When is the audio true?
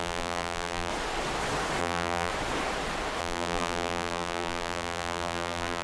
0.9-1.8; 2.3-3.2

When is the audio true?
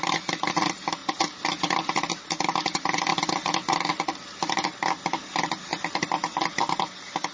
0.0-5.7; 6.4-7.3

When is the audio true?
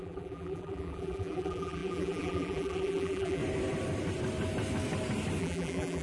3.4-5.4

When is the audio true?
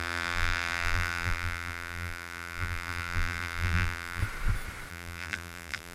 4.2-4.9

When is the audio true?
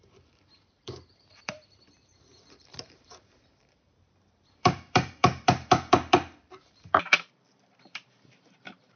none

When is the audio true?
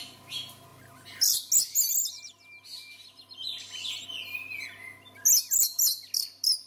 0.0-6.7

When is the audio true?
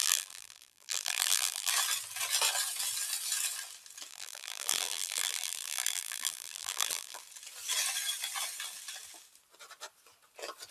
1.7-4.1; 7.2-10.7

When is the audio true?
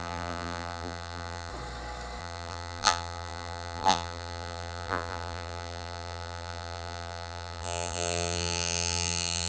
1.5-2.2